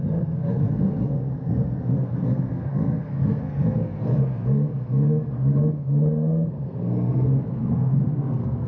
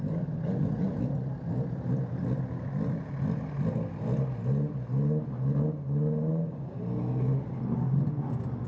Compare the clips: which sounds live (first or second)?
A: second